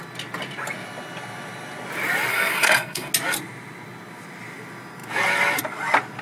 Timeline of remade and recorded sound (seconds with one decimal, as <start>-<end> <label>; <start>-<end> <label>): 0.0-2.3 recorded; 2.3-3.1 remade; 3.1-6.2 recorded